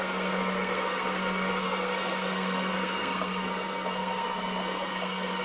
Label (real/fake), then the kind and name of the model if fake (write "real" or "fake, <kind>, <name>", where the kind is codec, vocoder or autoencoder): fake, codec, SNAC